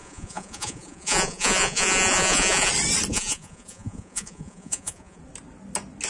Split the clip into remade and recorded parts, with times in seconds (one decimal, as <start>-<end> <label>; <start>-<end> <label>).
0.0-2.7 remade; 2.7-3.1 recorded; 3.1-5.2 remade; 5.2-6.1 recorded